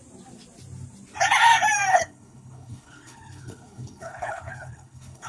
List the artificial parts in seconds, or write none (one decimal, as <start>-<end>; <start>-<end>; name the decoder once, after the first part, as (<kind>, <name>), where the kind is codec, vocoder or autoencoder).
1.9-5.3 (codec, HILCodec)